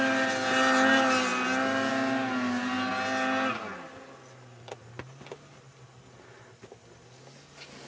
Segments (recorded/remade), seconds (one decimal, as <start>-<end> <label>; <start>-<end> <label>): 0.0-7.9 recorded